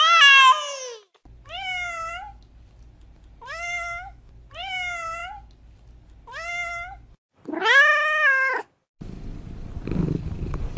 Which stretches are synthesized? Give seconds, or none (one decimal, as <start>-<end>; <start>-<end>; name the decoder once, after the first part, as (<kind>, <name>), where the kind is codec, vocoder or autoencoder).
3.5-4.3 (autoencoder, DAC-VAE); 7.9-8.6